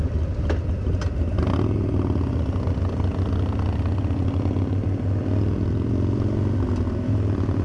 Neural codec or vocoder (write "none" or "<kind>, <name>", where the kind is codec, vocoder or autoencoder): none